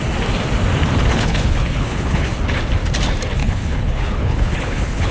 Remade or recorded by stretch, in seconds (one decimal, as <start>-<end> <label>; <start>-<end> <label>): 0.0-1.1 recorded; 1.1-2.3 remade; 2.3-3.4 recorded; 3.4-5.1 remade